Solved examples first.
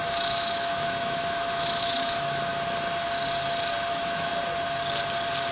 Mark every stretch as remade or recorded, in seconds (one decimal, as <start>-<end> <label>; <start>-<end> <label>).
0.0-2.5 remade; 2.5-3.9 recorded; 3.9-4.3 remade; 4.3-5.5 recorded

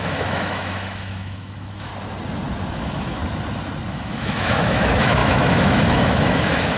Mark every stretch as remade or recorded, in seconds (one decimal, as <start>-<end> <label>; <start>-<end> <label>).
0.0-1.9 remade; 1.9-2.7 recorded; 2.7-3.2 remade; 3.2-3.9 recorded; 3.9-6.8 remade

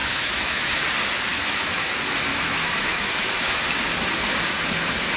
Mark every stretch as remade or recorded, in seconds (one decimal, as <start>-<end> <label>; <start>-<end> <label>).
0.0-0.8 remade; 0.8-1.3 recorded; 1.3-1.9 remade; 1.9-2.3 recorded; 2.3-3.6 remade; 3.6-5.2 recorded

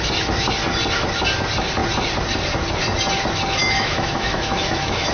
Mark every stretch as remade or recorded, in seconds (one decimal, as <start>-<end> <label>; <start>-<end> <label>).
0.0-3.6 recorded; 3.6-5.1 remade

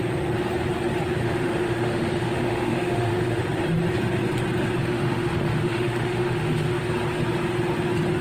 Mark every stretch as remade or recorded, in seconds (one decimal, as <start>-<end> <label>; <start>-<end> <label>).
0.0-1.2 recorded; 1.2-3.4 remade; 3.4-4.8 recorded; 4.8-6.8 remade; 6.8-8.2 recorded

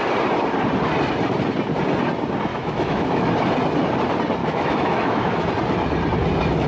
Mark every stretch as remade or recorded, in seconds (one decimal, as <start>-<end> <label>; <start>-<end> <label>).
0.0-2.5 recorded; 2.5-3.3 remade; 3.3-4.4 recorded; 4.4-5.5 remade; 5.5-6.7 recorded

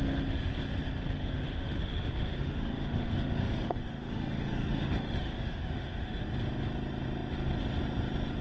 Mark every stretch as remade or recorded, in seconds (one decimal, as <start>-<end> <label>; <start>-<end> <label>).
0.0-1.2 recorded; 1.2-6.2 remade; 6.2-8.4 recorded